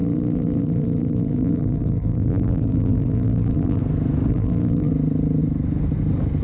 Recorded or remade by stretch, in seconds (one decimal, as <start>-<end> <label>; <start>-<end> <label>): 0.0-3.8 remade; 3.8-4.3 recorded; 4.3-4.9 remade; 4.9-6.4 recorded